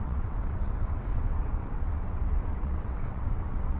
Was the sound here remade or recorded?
remade